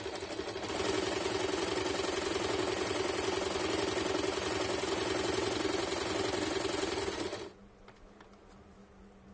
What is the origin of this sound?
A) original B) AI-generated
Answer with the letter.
A